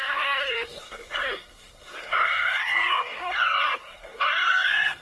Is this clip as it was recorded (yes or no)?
no